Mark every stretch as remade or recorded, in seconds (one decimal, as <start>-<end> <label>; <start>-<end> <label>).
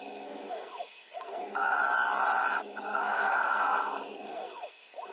0.0-1.8 remade; 1.8-2.6 recorded; 2.6-5.1 remade